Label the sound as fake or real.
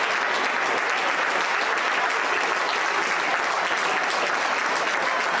real